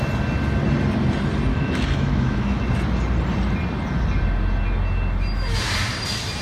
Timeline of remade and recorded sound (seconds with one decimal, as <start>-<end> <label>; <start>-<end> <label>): 0.0-1.5 recorded; 1.5-2.6 remade; 2.6-6.4 recorded